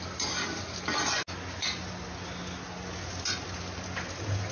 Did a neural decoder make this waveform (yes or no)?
no